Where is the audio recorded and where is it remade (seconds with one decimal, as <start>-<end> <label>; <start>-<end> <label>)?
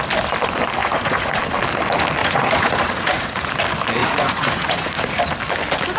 0.0-0.8 recorded; 0.8-1.4 remade; 1.4-2.2 recorded; 2.2-3.5 remade; 3.5-4.0 recorded; 4.0-5.2 remade; 5.2-6.0 recorded